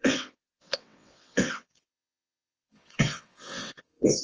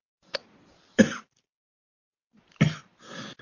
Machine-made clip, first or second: first